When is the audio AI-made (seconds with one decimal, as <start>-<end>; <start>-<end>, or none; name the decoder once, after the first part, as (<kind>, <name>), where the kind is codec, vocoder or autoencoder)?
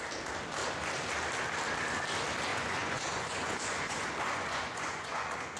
2.5-5.6 (vocoder, Vocos)